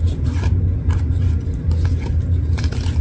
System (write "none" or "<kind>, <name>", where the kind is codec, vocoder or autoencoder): none